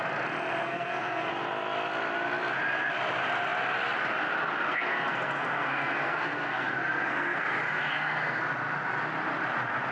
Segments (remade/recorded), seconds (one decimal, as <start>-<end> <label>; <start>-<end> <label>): 0.0-0.6 recorded; 0.6-1.3 remade; 1.3-4.6 recorded; 4.6-8.4 remade; 8.4-9.9 recorded

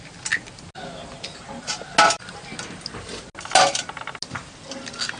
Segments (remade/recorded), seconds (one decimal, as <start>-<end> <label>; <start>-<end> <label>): 0.0-5.2 recorded

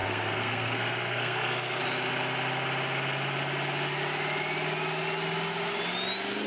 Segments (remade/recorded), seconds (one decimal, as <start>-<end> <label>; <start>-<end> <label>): 0.0-1.8 remade; 1.8-6.5 recorded